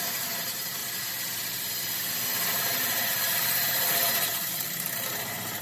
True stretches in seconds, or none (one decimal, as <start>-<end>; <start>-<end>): 0.8-2.5